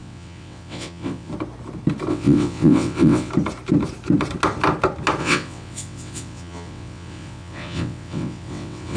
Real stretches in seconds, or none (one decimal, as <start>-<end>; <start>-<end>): 1.3-2.1; 3.3-5.2